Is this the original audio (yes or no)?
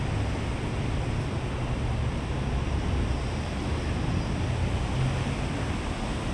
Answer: yes